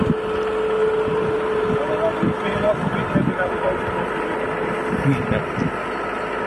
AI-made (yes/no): no